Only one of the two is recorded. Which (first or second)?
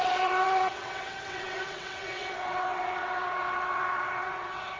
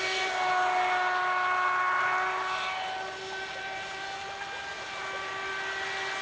second